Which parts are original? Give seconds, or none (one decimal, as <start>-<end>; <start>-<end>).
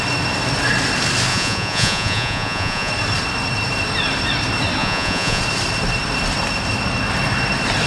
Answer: 0.0-1.3; 2.9-4.8; 5.4-7.9